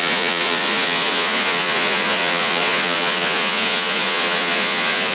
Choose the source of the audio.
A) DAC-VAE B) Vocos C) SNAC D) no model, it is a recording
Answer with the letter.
B